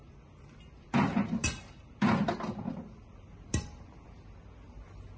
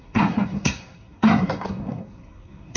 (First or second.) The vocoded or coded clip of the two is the second